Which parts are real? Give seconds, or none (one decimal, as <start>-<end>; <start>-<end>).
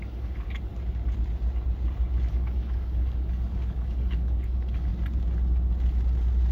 0.7-2.3; 4.9-6.5